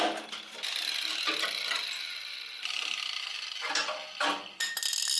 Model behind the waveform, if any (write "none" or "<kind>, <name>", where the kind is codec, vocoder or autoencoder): none